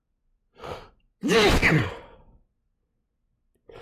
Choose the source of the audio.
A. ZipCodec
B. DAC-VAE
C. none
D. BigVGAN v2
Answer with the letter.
C